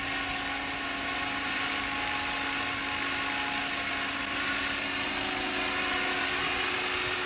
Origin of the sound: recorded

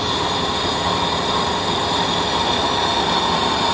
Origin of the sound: recorded